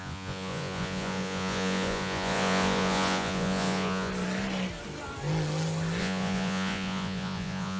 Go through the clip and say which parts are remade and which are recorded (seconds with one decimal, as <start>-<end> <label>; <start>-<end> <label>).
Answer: 0.0-4.1 remade; 4.1-6.0 recorded; 6.0-7.8 remade